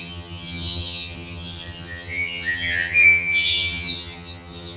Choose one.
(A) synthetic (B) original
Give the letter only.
A